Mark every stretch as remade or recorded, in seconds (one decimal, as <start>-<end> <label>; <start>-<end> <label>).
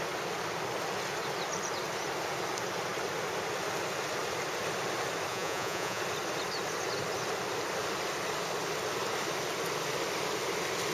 0.0-5.3 recorded; 5.3-6.0 remade; 6.0-10.9 recorded